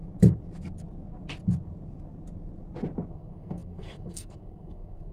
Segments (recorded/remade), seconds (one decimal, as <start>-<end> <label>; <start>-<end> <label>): 0.0-3.1 recorded; 3.1-5.1 remade